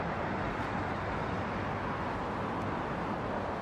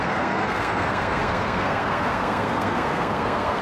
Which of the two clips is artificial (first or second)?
second